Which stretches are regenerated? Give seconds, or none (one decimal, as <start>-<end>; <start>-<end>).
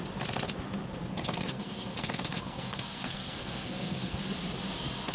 1.1-4.2